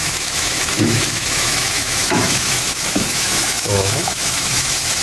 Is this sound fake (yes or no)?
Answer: yes